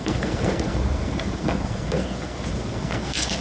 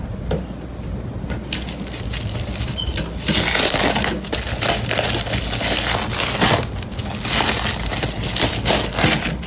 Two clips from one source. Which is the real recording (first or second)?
second